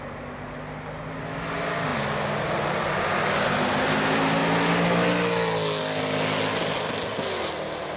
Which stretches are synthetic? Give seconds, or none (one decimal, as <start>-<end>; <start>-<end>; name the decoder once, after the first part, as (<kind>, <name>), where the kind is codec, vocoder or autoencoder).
none